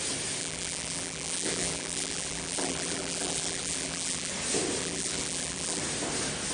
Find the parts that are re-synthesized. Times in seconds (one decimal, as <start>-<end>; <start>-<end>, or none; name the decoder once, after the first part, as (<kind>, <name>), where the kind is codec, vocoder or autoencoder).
0.4-4.3 (vocoder, BigVGAN v2); 4.8-5.8